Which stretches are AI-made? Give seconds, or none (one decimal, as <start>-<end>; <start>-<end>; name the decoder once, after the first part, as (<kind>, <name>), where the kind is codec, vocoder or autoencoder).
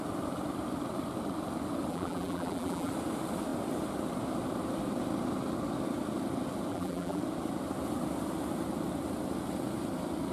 1.9-2.9 (vocoder, BigVGAN v2); 6.7-7.2